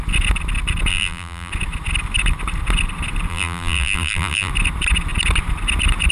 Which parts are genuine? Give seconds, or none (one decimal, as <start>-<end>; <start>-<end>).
0.0-0.9; 1.5-3.3; 4.5-6.1